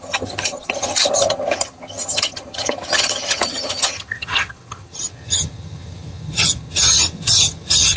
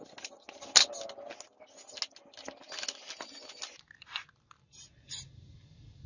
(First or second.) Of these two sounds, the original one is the second